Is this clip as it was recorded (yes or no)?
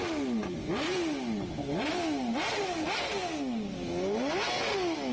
yes